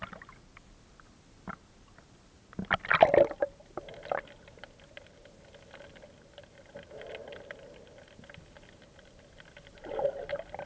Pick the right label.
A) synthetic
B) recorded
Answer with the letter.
B